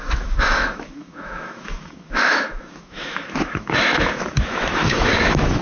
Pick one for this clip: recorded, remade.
remade